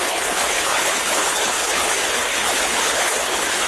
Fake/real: fake